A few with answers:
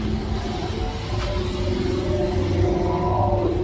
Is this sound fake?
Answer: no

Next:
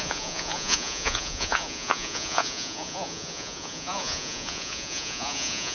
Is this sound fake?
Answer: yes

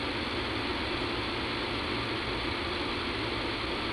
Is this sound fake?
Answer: no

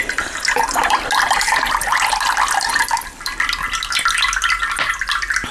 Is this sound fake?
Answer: no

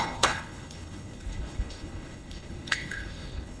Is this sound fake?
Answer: yes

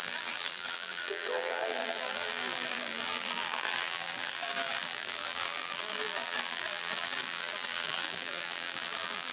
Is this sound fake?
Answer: yes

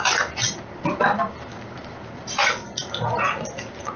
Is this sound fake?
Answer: no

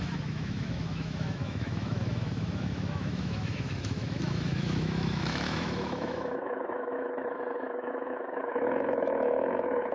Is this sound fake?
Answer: yes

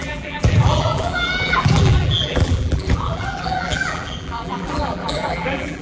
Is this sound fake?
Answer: yes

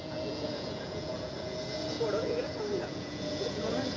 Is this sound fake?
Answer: yes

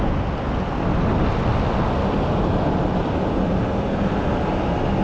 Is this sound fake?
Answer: no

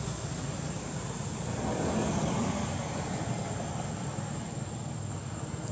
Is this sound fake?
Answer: no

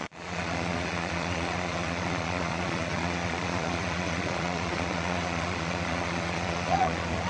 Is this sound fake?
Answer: yes